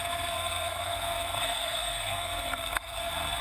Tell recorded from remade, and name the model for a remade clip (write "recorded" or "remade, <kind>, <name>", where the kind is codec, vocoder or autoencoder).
remade, codec, SNAC